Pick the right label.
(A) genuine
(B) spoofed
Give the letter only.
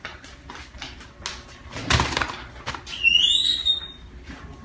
A